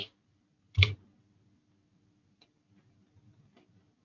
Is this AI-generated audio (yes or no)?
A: no